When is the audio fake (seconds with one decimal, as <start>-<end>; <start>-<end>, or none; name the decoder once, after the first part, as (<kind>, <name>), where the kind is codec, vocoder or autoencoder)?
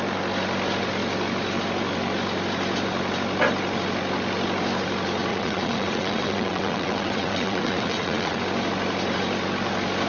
5.3-8.4 (vocoder, WaveNeXt)